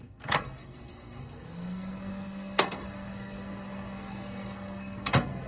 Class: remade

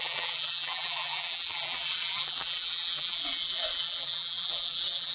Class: remade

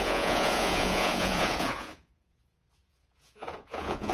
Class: remade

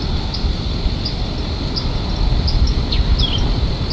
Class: recorded